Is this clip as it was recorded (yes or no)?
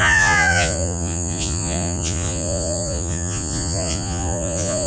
no